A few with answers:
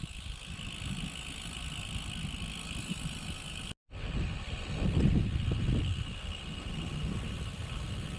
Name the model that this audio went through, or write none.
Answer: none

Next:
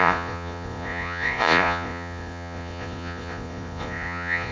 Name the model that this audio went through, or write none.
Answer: vocoder, Vocos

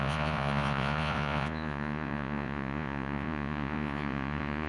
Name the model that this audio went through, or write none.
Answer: vocoder, Vocos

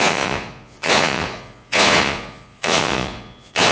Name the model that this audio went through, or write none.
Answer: vocoder, Vocos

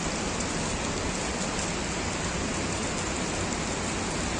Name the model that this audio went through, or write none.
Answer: none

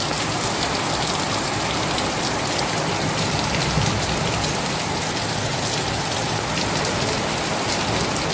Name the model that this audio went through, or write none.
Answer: none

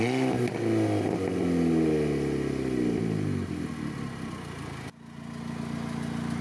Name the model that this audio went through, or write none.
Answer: none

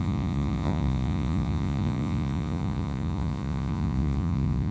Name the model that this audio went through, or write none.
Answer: vocoder, Vocos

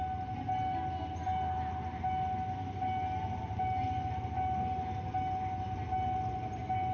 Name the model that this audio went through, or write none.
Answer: none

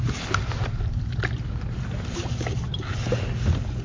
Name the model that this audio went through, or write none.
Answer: none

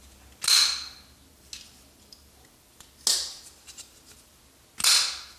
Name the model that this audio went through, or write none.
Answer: none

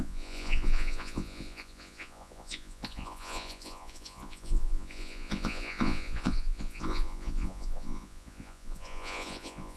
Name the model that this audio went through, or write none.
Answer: vocoder, Vocos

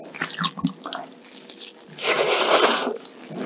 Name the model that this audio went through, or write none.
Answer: none